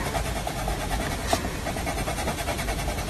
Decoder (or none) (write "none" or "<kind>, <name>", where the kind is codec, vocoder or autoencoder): none